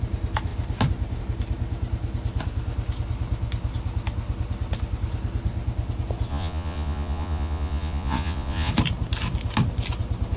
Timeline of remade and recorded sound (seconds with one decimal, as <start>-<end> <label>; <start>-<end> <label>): 0.0-6.3 recorded; 6.3-8.7 remade; 8.7-10.4 recorded